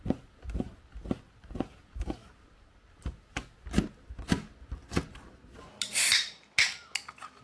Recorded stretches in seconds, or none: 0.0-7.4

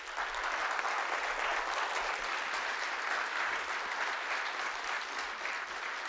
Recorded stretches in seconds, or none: 0.0-6.1

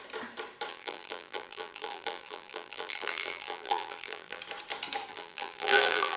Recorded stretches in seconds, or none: 0.0-0.7; 4.4-5.1

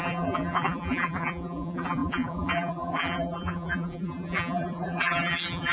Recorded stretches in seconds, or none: none

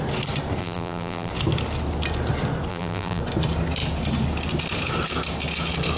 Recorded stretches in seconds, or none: 0.0-0.6; 1.3-2.7; 3.2-6.0

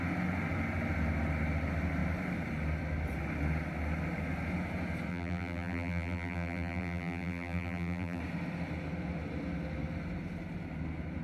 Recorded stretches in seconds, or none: 0.0-5.1; 8.2-11.2

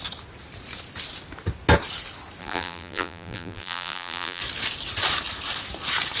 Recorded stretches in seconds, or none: 0.0-2.4; 4.4-6.2

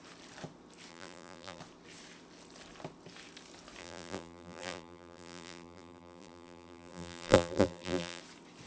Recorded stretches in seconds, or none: 0.0-0.9; 1.6-3.8; 8.2-8.7